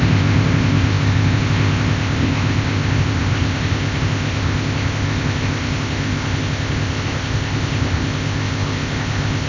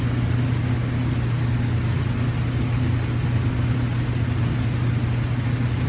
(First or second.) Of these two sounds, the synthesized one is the first